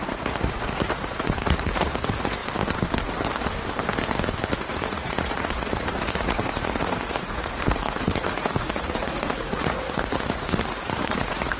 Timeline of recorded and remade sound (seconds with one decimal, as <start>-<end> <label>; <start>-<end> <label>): 0.0-2.4 remade; 2.4-4.7 recorded; 4.7-11.6 remade